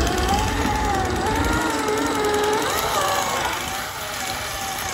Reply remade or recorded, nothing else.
recorded